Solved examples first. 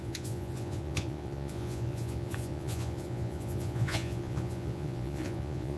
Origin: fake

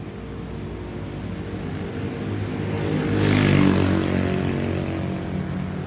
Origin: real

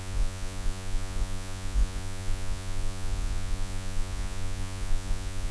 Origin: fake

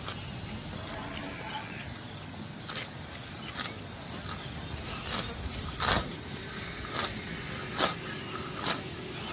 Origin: real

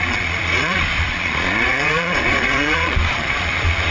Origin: fake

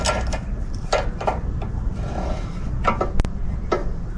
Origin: real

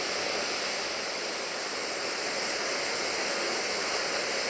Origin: real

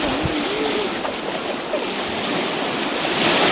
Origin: real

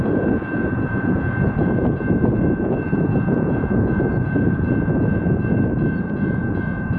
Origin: fake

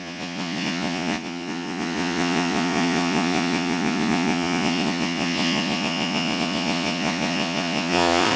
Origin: fake